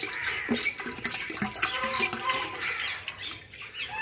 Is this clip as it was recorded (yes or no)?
yes